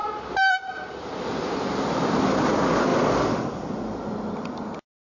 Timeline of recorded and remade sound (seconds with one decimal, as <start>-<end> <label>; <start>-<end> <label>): 0.0-0.7 remade; 0.7-5.1 recorded